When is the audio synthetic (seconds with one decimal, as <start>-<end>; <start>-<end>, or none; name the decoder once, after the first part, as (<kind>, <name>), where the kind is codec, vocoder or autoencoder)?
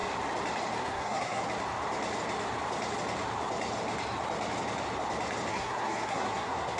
0.8-1.4 (codec, SNAC); 5.5-6.8